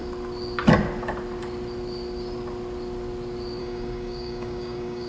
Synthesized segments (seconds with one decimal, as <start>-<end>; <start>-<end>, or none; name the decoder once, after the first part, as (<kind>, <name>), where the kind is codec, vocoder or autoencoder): 3.6-5.1 (codec, DAC)